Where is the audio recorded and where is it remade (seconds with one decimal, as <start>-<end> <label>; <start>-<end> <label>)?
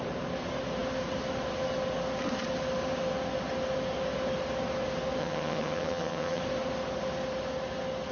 0.0-5.2 recorded; 5.2-6.4 remade; 6.4-8.1 recorded